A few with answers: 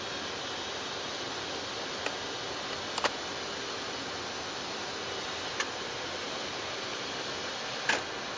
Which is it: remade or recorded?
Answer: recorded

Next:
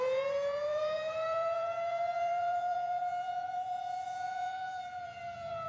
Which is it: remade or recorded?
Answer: remade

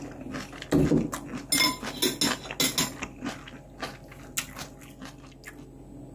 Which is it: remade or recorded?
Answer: recorded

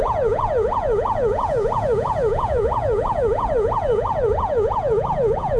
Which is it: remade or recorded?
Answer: remade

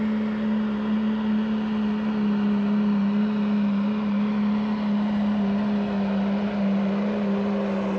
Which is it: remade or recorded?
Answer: recorded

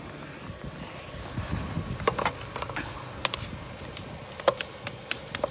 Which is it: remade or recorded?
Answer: recorded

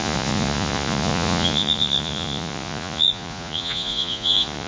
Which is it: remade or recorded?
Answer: remade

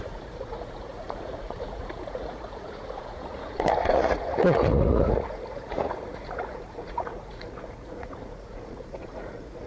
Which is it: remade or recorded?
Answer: remade